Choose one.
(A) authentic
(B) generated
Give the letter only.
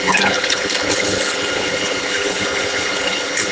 B